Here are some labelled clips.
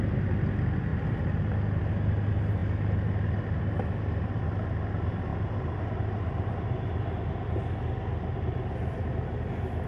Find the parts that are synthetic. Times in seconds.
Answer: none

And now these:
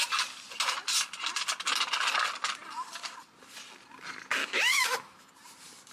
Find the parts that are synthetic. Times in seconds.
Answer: 4.4-5.3 (autoencoder, DAC-VAE)

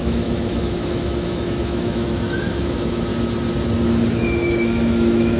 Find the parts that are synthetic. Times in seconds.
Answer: 0.0-3.1 (autoencoder, DAC-VAE); 4.2-5.4